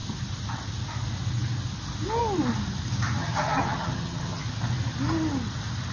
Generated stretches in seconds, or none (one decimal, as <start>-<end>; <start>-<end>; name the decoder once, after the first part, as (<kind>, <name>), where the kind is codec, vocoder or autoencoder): 3.2-4.4 (vocoder, HiFi-GAN)